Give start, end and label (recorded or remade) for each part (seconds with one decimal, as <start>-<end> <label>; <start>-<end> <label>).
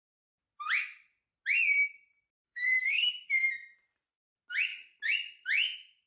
0.0-2.4 recorded; 2.4-3.1 remade; 3.1-6.1 recorded